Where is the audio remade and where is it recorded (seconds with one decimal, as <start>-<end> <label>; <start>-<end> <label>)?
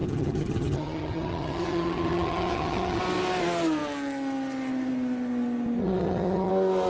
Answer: 0.0-3.0 remade; 3.0-5.8 recorded; 5.8-6.5 remade; 6.5-6.9 recorded